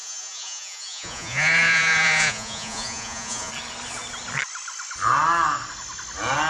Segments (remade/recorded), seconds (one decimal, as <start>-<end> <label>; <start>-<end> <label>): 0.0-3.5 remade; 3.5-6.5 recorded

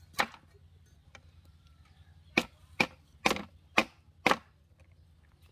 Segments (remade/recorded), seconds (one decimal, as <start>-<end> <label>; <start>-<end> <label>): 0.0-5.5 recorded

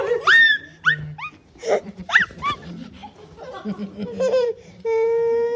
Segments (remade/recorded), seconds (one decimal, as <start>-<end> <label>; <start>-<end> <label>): 0.0-0.9 remade; 0.9-1.8 recorded; 1.8-5.6 remade

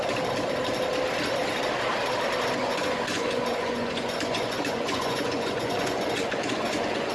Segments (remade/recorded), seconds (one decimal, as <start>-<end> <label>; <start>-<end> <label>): 0.0-2.6 recorded; 2.6-7.1 remade